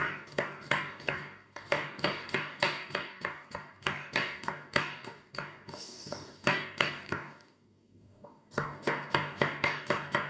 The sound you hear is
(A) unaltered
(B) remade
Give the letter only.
B